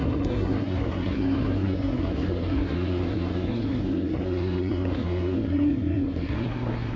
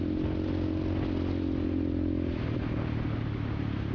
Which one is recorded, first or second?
second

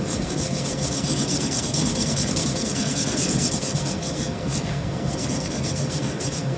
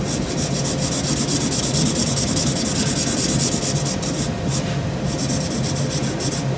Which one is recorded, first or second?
second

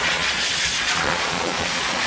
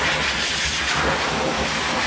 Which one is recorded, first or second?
second